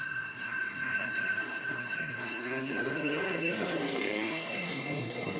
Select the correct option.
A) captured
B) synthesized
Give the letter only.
B